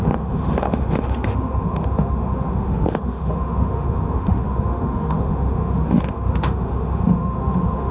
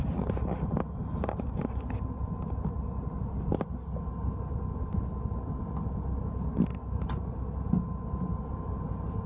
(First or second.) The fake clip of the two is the first